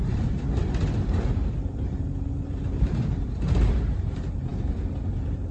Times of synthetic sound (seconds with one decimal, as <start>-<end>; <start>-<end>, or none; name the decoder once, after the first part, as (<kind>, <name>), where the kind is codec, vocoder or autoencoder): 0.0-5.5 (vocoder, BigVGAN v2)